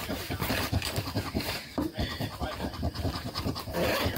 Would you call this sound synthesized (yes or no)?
yes